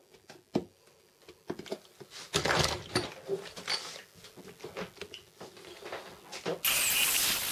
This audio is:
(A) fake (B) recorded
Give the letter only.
B